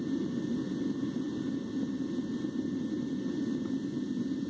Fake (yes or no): no